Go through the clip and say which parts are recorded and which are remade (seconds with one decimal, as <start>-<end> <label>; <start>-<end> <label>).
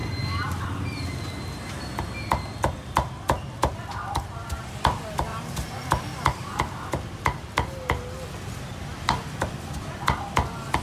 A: 0.0-0.6 remade; 0.6-5.3 recorded; 5.3-10.2 remade; 10.2-10.8 recorded